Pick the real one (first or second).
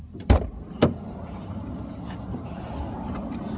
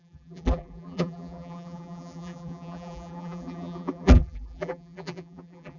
first